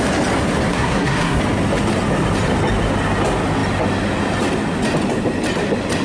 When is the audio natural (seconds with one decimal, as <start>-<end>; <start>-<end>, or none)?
0.0-0.7; 1.4-6.0